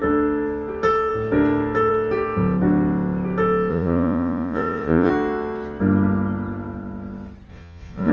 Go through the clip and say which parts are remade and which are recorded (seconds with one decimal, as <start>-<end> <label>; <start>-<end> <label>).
0.0-3.7 recorded; 3.7-5.1 remade; 5.1-7.5 recorded; 7.5-8.1 remade